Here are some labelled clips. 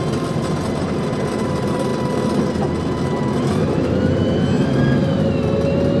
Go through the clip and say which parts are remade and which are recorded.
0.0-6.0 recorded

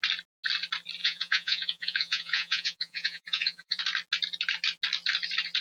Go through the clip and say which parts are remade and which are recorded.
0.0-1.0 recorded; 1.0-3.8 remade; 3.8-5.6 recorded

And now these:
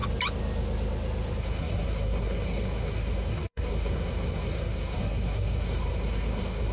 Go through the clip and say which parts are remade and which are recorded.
0.0-1.4 recorded; 1.4-6.7 remade

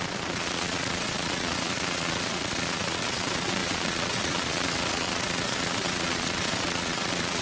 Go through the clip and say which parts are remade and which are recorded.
0.0-7.4 remade

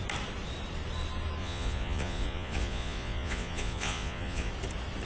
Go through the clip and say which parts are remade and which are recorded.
0.0-1.4 recorded; 1.4-4.5 remade; 4.5-5.1 recorded